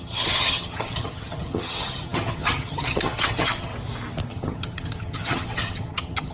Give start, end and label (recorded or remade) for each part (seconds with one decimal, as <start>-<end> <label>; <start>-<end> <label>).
0.0-3.7 remade; 3.7-4.3 recorded; 4.3-6.3 remade